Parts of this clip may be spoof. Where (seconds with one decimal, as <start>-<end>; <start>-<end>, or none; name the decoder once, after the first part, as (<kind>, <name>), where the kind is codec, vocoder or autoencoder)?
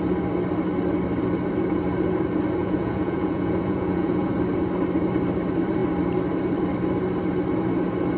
2.6-4.3 (vocoder, Vocos)